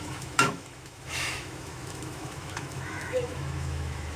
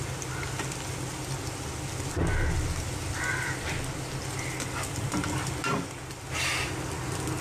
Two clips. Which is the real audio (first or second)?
second